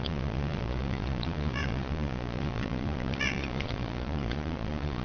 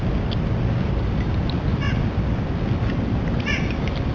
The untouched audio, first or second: second